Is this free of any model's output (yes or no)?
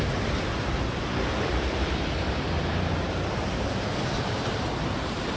no